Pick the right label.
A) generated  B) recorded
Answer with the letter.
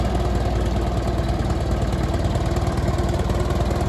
B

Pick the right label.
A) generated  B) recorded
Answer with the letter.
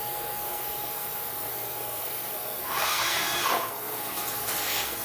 A